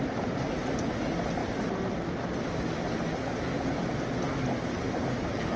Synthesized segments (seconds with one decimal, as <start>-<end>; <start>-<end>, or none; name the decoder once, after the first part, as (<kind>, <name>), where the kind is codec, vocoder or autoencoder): none